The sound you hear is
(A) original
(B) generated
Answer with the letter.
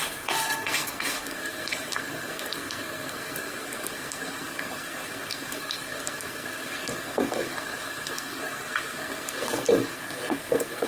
B